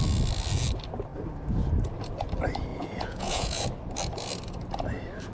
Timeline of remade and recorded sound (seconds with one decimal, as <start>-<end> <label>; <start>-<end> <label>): 0.0-2.7 recorded; 2.7-3.7 remade; 3.7-5.3 recorded